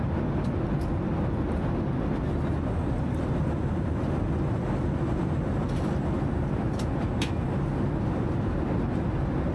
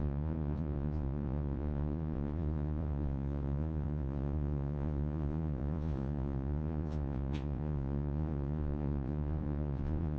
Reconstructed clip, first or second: second